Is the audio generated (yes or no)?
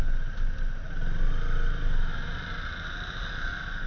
no